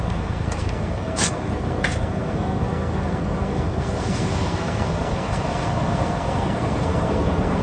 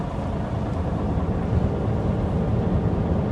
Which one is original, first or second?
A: second